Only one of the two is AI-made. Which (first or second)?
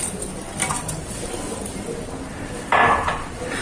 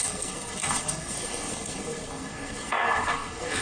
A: second